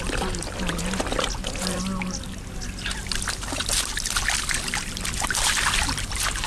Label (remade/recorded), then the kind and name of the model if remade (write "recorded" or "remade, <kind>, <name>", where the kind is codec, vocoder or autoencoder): recorded